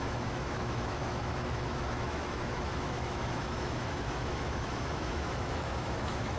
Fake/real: fake